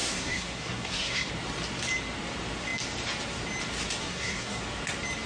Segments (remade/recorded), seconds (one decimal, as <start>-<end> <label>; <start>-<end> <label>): 0.0-1.3 remade; 1.3-4.0 recorded; 4.0-4.6 remade; 4.6-5.3 recorded